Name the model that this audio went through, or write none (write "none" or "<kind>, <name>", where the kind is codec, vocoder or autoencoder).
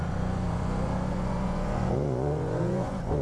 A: vocoder, Vocos